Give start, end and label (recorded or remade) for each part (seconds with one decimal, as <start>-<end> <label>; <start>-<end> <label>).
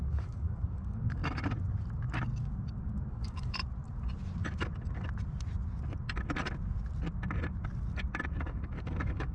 0.0-1.2 remade; 1.2-3.1 recorded; 3.1-3.6 remade; 3.6-8.4 recorded; 8.4-9.3 remade